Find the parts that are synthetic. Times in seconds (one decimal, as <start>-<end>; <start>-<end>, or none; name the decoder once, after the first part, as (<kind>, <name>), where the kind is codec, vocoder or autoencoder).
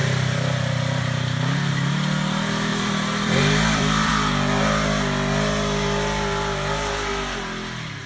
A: 2.7-4.1 (vocoder, BigVGAN v2)